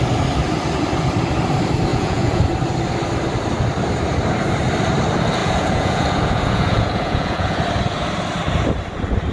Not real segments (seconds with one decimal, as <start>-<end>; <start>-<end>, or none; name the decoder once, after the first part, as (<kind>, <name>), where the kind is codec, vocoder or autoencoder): 1.9-2.4 (vocoder, Vocos); 5.4-7.6